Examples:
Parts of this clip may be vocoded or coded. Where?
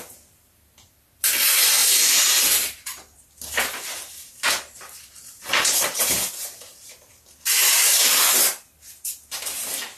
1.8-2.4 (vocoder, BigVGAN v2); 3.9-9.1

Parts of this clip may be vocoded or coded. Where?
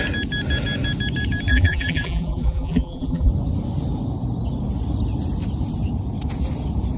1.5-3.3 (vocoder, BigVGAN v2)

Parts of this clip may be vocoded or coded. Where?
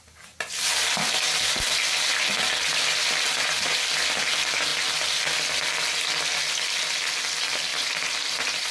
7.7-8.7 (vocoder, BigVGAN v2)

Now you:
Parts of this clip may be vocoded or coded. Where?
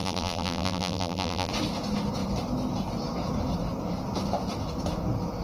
0.0-1.5 (vocoder, BigVGAN v2)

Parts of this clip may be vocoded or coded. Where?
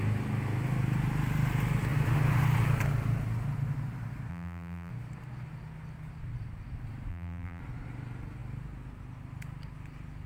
4.3-4.9 (vocoder, BigVGAN v2); 7.1-7.6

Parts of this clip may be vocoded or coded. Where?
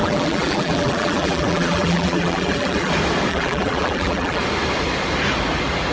0.0-2.9 (vocoder, BigVGAN v2); 3.3-4.4